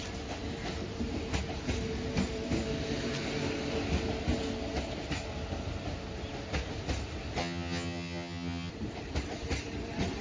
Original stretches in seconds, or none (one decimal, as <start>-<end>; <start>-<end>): 0.0-7.4; 8.7-10.2